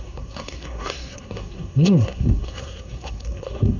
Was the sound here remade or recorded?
remade